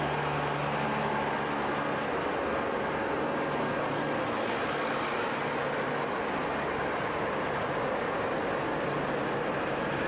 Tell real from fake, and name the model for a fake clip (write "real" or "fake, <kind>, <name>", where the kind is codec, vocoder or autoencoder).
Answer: real